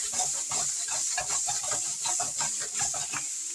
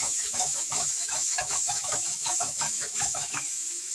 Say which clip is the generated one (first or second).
second